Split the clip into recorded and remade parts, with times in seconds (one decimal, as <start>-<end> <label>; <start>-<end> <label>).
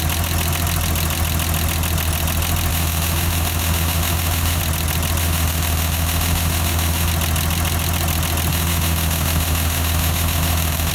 0.0-2.7 recorded; 2.7-4.6 remade; 4.6-5.2 recorded; 5.2-7.1 remade; 7.1-8.5 recorded; 8.5-10.9 remade